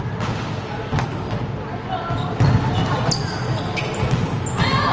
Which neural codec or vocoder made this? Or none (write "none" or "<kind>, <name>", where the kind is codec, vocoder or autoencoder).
none